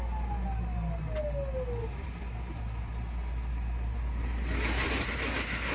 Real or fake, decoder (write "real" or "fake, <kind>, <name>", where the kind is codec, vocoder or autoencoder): real